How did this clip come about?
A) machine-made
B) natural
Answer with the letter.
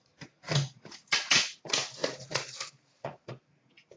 A